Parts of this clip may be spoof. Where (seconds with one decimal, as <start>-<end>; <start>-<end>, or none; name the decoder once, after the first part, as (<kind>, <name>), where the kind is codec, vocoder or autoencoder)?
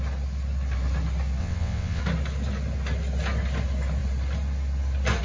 1.4-2.0 (vocoder, WaveNeXt)